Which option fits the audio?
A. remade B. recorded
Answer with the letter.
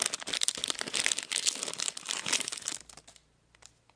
B